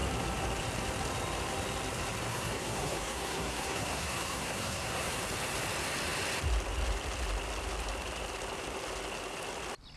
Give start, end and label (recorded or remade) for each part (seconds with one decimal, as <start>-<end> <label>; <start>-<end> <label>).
0.0-2.3 recorded; 2.3-5.2 remade; 5.2-10.0 recorded

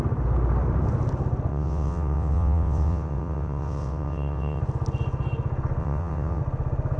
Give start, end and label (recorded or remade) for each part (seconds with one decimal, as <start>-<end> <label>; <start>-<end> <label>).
0.0-1.5 recorded; 1.5-4.6 remade; 4.6-5.8 recorded; 5.8-6.4 remade; 6.4-7.0 recorded

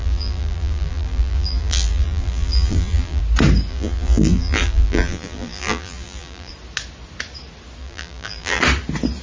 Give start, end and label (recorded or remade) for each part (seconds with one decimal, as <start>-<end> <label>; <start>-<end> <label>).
0.0-3.2 remade; 3.2-3.7 recorded; 3.7-6.5 remade; 6.5-7.8 recorded; 7.8-8.6 remade; 8.6-9.2 recorded

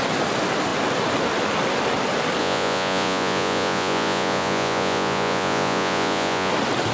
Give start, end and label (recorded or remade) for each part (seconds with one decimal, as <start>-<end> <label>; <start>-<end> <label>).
0.0-2.4 recorded; 2.4-6.5 remade; 6.5-6.9 recorded

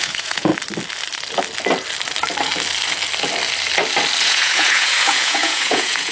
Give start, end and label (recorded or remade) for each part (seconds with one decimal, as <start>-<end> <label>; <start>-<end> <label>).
0.0-0.5 remade; 0.5-4.2 recorded; 4.2-6.1 remade

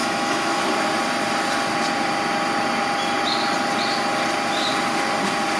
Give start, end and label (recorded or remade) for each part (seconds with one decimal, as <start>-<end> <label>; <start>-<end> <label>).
0.0-0.6 remade; 0.6-5.6 recorded

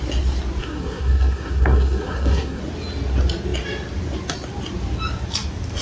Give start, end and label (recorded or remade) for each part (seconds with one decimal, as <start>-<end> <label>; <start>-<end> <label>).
0.0-0.6 recorded; 0.6-2.6 remade; 2.6-5.8 recorded